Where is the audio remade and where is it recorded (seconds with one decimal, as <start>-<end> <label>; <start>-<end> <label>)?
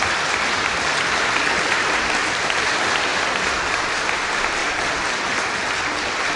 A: 0.0-4.6 remade; 4.6-5.1 recorded; 5.1-6.4 remade